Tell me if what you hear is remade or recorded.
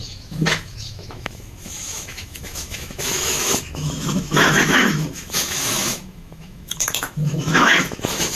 remade